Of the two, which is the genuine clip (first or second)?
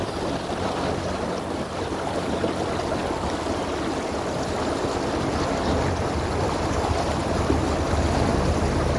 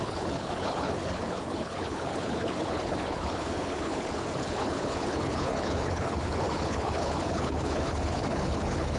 first